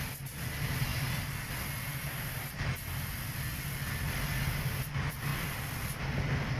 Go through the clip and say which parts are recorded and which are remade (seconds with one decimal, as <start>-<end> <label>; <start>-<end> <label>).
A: 0.0-1.9 recorded; 1.9-3.4 remade; 3.4-5.3 recorded; 5.3-6.0 remade; 6.0-6.6 recorded